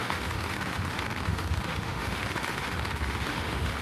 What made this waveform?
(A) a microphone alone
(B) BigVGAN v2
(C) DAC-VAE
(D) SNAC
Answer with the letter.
C